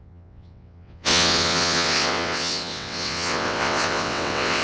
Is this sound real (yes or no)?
no